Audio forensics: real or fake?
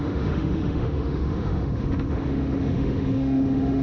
fake